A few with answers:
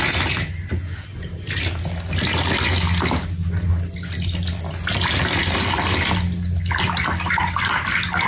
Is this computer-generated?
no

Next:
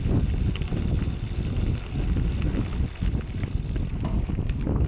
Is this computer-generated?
no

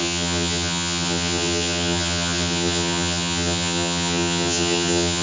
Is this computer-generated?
yes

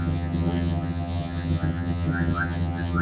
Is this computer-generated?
yes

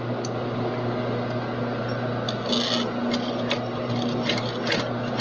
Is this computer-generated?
no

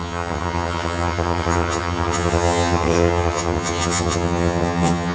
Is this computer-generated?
yes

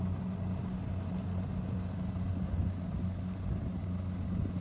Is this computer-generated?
no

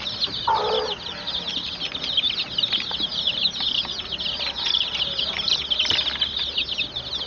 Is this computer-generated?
no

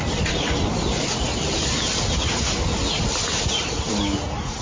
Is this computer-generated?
no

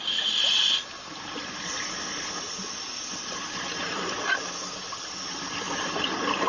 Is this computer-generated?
no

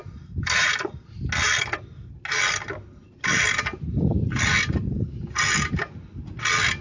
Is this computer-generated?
no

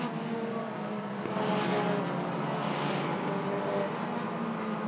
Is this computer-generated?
no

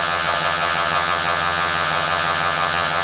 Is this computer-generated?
yes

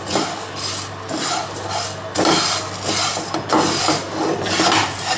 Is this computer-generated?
no